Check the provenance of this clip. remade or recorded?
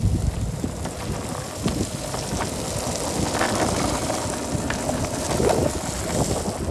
recorded